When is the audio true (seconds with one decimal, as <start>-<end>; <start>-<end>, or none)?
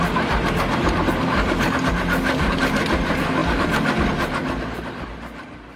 0.0-5.8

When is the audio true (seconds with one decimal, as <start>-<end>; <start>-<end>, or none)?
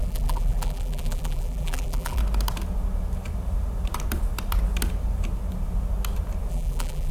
2.2-6.5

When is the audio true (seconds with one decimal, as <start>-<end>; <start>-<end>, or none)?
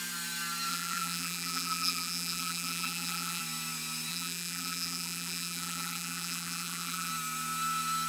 0.0-0.7; 3.4-4.1; 7.1-8.1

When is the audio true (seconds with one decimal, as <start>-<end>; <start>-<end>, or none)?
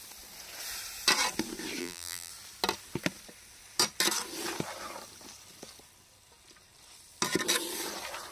0.0-1.8; 2.3-8.3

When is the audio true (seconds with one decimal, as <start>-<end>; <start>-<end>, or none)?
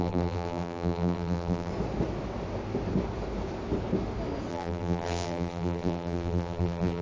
1.7-4.5